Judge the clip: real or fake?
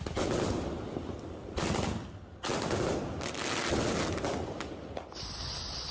real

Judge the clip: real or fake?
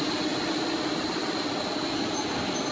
real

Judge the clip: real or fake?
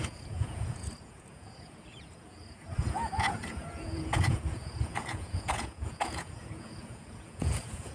fake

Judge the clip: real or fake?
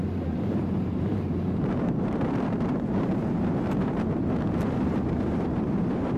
fake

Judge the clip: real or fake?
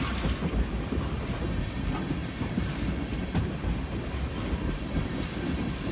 real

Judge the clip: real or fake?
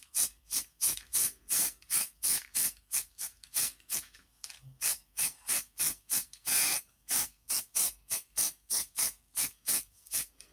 fake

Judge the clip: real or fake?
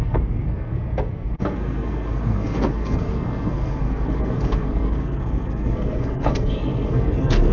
fake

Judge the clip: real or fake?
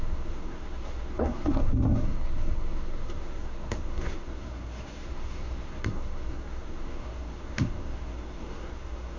fake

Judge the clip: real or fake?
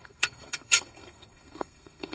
fake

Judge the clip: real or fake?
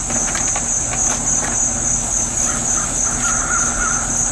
real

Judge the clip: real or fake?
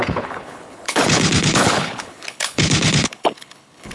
fake